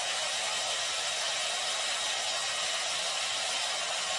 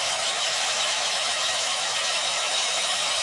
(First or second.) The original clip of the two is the first